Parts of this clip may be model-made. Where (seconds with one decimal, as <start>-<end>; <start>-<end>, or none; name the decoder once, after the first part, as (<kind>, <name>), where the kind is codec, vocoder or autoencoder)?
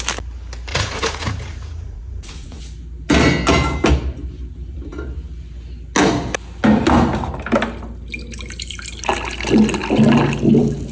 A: 0.7-2.6 (vocoder, Vocos)